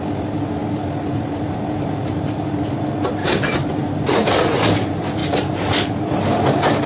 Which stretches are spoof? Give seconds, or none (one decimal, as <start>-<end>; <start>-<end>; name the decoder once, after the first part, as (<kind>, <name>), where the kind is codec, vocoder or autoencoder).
3.2-4.6 (vocoder, BigVGAN v2); 5.2-6.1